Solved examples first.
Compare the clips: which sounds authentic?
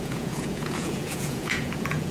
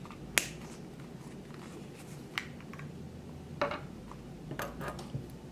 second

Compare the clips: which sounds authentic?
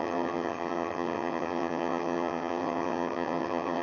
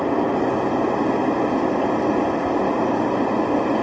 second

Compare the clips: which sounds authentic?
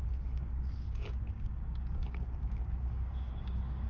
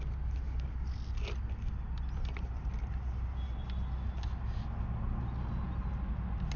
second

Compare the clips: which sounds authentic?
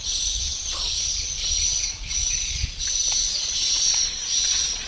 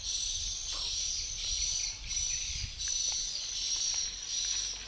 second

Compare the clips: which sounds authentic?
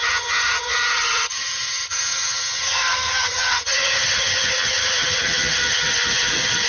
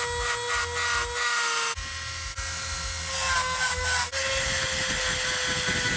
second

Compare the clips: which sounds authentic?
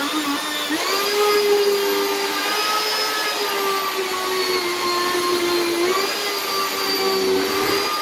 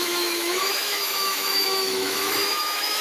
first